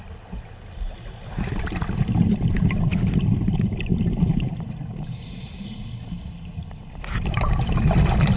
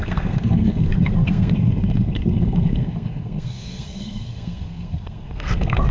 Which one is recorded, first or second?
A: first